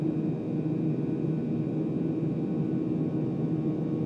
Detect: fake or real real